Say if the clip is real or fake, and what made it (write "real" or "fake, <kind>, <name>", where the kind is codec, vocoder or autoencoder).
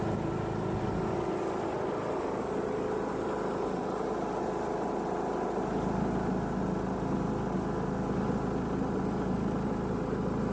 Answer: real